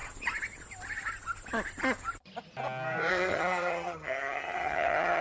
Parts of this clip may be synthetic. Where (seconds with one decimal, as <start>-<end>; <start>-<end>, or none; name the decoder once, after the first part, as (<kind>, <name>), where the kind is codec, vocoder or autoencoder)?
3.1-5.2 (vocoder, HiFi-GAN)

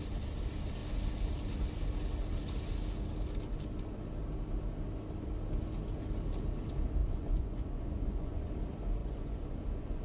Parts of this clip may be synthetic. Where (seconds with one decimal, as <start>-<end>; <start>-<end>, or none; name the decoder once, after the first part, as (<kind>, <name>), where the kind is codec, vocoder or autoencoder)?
7.0-8.5 (vocoder, Vocos); 9.0-10.0

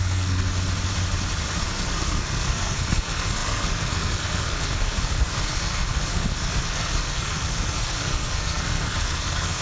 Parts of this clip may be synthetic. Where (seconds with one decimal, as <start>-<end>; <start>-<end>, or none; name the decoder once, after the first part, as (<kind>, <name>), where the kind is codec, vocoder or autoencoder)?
0.0-0.5 (codec, SNAC); 1.6-9.6

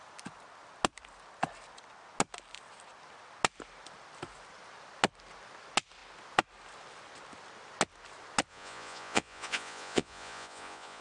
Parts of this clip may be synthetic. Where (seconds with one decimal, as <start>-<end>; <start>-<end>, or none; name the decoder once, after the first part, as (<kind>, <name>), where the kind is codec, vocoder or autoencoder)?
8.5-11.0 (vocoder, Vocos)

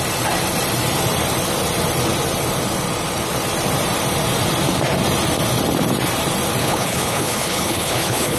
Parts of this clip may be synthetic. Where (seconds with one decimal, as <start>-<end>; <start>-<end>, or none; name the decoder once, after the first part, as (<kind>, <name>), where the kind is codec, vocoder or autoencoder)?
6.6-8.4 (codec, HILCodec)